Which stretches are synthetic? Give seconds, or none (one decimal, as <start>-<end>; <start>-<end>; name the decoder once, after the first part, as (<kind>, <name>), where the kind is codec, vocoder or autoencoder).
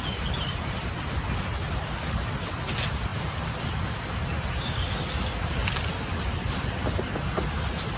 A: none